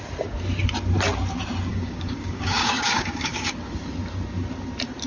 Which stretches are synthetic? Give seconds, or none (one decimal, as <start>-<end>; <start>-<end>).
1.7-3.5